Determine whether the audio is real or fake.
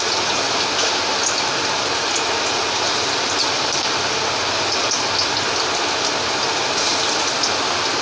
real